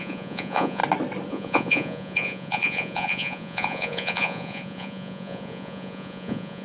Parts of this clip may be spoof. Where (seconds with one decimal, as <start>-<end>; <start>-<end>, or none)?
0.0-0.8; 1.3-6.6